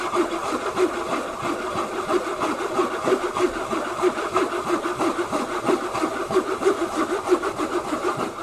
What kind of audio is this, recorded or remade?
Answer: recorded